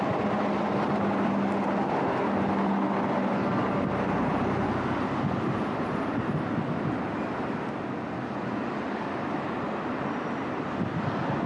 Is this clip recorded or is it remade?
recorded